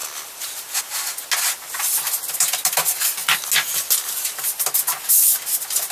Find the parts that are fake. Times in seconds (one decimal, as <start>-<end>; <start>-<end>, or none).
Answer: none